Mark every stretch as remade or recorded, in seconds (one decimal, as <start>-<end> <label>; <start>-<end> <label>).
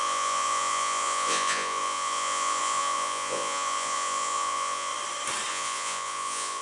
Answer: 0.0-4.9 remade; 4.9-5.5 recorded; 5.5-6.6 remade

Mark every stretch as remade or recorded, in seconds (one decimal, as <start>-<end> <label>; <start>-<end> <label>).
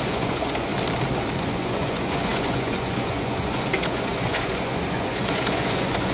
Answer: 0.0-0.7 remade; 0.7-1.4 recorded; 1.4-6.1 remade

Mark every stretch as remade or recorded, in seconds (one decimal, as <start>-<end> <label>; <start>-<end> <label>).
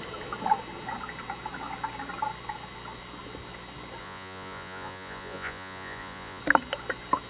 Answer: 0.0-4.0 recorded; 4.0-6.4 remade; 6.4-7.3 recorded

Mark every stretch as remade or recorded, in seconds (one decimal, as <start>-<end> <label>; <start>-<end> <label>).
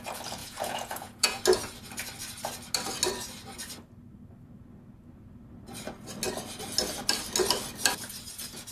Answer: 0.0-0.4 recorded; 0.4-1.4 remade; 1.4-8.7 recorded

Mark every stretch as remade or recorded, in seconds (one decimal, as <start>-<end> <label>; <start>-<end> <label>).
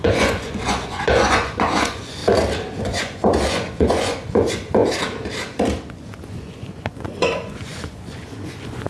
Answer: 0.0-2.2 remade; 2.2-2.8 recorded; 2.8-4.8 remade; 4.8-5.9 recorded; 5.9-8.9 remade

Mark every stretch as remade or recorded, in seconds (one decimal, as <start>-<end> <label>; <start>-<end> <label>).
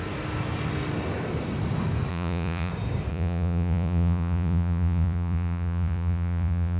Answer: 0.0-2.1 recorded; 2.1-2.7 remade; 2.7-3.1 recorded; 3.1-6.8 remade